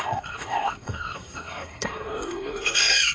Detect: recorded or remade remade